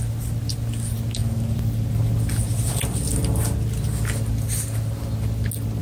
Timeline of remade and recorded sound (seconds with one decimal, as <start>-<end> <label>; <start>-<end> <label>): 0.0-5.8 recorded